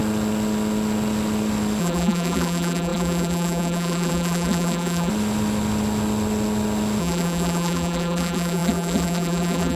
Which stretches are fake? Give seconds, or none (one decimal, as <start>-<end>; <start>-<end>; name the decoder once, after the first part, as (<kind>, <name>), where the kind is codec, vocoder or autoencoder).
1.8-5.1 (vocoder, BigVGAN v2); 7.0-9.8